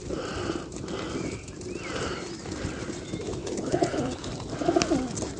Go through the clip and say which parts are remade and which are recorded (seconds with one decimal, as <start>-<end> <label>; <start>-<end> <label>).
0.0-3.4 recorded; 3.4-4.3 remade; 4.3-5.4 recorded